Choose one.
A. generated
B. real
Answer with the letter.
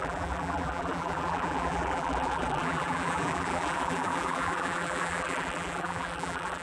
A